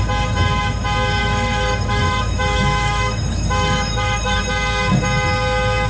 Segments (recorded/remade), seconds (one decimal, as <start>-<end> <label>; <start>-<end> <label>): 0.0-1.2 recorded; 1.2-4.4 remade; 4.4-5.9 recorded